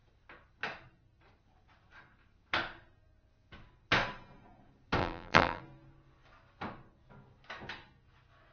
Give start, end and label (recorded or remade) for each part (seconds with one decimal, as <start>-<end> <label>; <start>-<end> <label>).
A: 0.0-5.0 recorded; 5.0-5.6 remade; 5.6-8.5 recorded